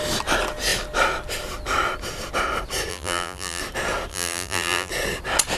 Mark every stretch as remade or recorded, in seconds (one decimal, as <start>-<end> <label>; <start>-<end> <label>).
0.0-2.9 recorded; 2.9-3.6 remade; 3.6-4.1 recorded; 4.1-4.9 remade; 4.9-5.6 recorded